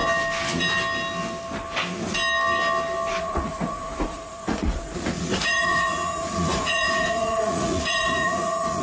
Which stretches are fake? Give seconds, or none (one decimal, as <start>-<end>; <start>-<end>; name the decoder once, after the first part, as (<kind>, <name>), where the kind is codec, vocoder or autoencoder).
3.2-8.8 (vocoder, Vocos)